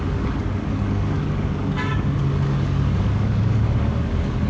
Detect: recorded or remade remade